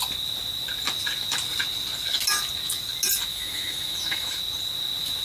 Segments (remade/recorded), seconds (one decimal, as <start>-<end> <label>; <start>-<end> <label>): 0.0-3.3 recorded; 3.3-4.4 remade; 4.4-5.2 recorded